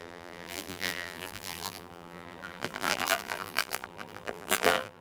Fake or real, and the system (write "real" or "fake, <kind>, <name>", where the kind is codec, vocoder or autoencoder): fake, vocoder, BigVGAN v2